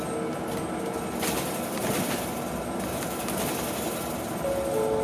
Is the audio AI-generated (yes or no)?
no